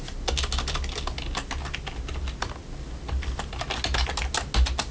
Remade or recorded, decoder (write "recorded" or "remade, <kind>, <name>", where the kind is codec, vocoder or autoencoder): recorded